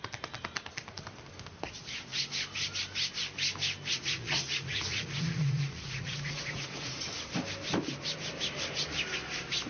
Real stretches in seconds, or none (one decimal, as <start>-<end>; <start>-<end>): 0.0-3.9; 7.0-9.7